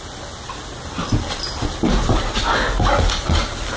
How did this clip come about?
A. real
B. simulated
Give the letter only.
A